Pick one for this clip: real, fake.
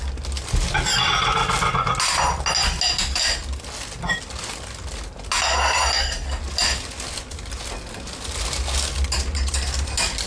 real